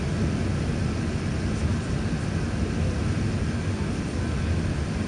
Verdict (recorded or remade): recorded